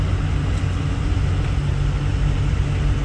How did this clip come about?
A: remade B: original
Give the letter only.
B